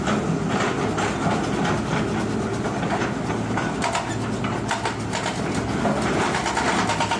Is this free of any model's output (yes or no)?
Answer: yes